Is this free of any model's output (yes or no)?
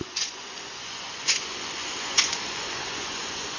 no